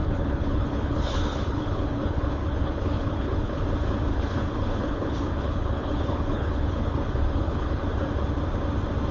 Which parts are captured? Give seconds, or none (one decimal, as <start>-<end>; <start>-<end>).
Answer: 3.6-4.1; 7.8-9.1